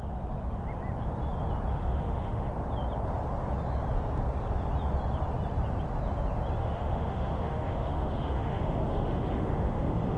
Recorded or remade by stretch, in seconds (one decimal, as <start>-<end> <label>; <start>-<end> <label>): 0.0-1.7 recorded; 1.7-2.5 remade; 2.5-6.6 recorded; 6.6-10.2 remade